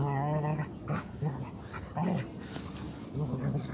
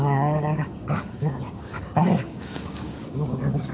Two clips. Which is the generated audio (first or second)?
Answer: second